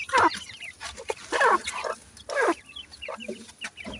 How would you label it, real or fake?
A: real